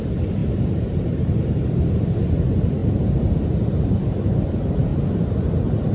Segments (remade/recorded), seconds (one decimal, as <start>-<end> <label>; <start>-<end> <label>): 0.0-2.8 remade; 2.8-3.6 recorded; 3.6-4.9 remade; 4.9-5.9 recorded